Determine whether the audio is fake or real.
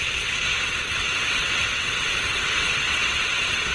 fake